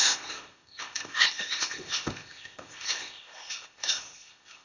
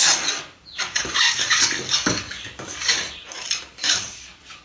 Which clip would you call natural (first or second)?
second